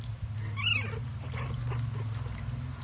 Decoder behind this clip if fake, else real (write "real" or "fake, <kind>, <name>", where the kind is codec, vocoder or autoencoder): real